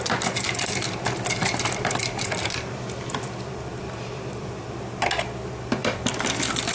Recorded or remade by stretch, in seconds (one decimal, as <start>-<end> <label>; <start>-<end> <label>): 0.0-0.8 recorded; 0.8-4.8 remade; 4.8-6.7 recorded